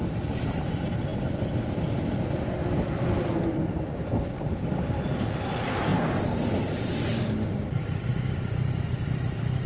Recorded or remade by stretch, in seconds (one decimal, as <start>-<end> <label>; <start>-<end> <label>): 0.0-9.7 recorded